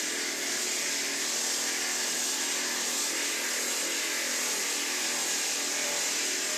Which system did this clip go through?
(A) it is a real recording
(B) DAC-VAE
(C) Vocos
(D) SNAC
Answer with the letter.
A